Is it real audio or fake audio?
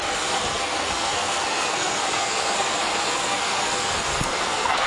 fake